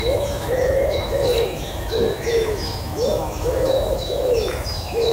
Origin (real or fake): fake